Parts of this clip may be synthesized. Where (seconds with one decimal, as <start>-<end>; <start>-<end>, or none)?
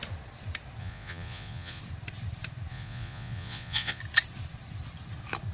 0.8-1.8; 2.7-4.0